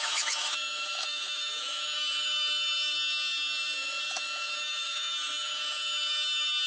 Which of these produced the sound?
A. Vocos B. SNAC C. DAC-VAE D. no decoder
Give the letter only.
C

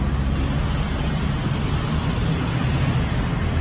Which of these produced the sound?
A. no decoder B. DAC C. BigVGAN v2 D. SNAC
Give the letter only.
A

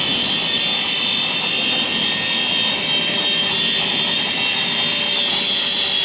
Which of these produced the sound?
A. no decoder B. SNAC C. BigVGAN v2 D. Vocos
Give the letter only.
A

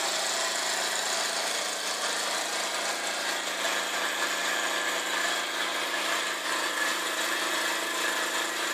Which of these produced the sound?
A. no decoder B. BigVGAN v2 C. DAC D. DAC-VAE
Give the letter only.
A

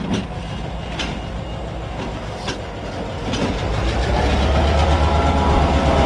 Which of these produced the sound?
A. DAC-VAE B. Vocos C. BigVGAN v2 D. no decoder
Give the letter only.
D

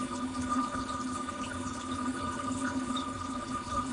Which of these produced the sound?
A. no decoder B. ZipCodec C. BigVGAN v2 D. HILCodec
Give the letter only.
D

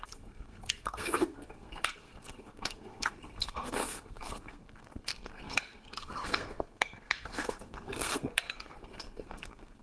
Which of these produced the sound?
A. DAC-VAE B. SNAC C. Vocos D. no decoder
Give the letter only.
B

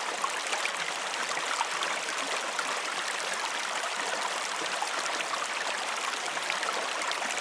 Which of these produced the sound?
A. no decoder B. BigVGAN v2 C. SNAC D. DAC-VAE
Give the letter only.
A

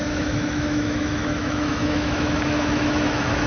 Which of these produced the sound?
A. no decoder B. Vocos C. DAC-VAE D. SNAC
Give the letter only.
C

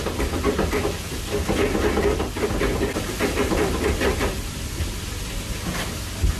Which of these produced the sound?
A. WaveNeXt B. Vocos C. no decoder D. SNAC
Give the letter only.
C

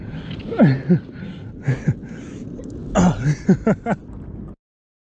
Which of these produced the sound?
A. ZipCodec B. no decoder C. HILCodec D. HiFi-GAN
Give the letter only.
B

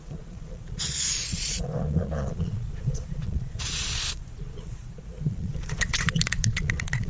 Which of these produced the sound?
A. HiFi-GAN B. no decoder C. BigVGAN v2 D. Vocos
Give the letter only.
D